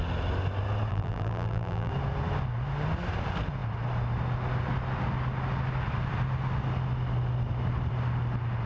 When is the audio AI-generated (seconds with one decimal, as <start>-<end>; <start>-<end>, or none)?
0.9-1.9